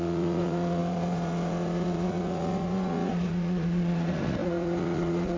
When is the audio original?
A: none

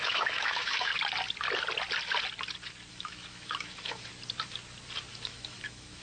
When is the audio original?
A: 0.9-2.9; 4.1-5.1